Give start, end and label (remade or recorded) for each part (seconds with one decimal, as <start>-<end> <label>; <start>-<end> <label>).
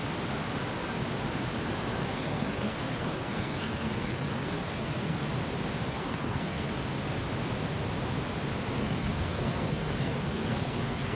0.0-2.0 recorded; 2.0-5.3 remade; 5.3-5.9 recorded; 5.9-6.8 remade; 6.8-8.7 recorded; 8.7-11.1 remade